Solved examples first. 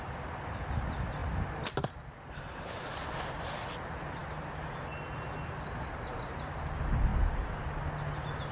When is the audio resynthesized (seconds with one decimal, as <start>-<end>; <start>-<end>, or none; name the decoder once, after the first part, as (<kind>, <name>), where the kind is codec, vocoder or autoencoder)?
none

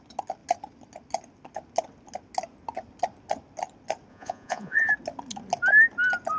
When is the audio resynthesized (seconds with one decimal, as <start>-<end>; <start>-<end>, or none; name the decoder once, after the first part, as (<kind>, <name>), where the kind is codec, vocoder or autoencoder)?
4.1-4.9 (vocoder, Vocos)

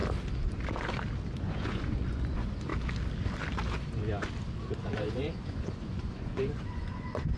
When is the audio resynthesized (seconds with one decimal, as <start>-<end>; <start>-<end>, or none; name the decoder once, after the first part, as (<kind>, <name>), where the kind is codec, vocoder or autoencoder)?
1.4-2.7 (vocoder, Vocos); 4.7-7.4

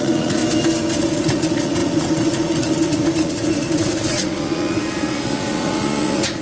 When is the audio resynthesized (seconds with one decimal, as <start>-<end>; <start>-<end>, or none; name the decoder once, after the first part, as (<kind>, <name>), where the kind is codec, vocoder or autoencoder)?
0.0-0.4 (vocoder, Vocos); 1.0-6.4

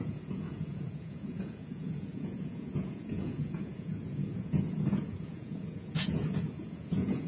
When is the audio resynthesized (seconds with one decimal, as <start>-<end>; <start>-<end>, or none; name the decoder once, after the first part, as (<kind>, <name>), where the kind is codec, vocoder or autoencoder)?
0.0-7.3 (vocoder, Vocos)